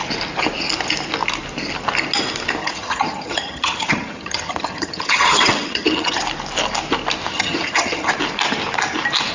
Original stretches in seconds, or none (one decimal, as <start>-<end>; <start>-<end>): 0.0-2.6; 6.2-7.3; 8.1-9.3